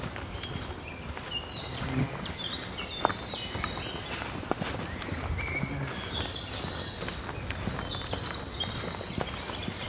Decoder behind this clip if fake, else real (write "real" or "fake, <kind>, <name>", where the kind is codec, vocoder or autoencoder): real